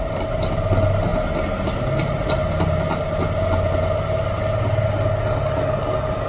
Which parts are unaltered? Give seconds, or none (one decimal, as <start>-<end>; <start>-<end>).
0.0-6.3